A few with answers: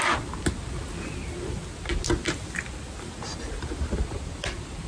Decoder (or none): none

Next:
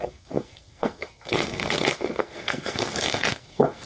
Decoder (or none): codec, SNAC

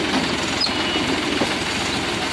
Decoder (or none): none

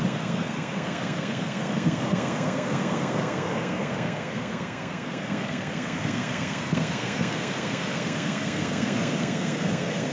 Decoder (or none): codec, SNAC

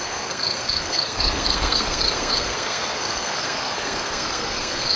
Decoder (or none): codec, SNAC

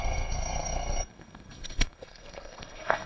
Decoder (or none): codec, SNAC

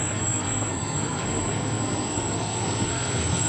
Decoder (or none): codec, SNAC